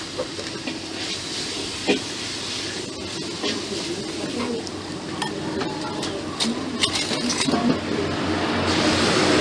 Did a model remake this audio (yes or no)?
no